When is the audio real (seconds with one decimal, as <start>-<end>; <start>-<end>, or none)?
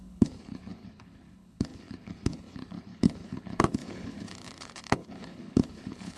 none